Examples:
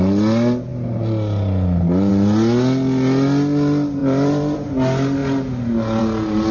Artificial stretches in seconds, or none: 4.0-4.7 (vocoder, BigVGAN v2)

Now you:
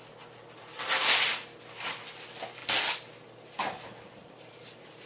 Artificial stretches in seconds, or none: none

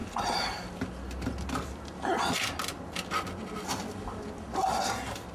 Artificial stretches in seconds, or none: none